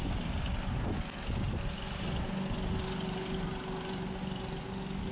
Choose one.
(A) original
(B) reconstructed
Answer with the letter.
A